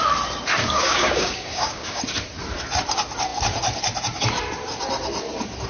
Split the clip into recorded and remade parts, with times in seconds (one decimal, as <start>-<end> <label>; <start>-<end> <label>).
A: 0.0-0.6 recorded; 0.6-2.0 remade; 2.0-5.7 recorded